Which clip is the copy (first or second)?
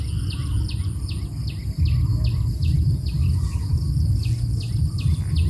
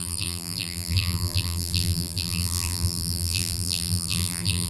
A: second